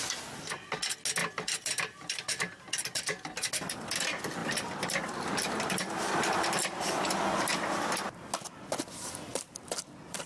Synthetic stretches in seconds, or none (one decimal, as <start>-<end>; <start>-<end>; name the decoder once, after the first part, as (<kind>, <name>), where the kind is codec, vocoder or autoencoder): 1.2-3.5 (vocoder, BigVGAN v2); 4.4-7.9; 9.3-10.3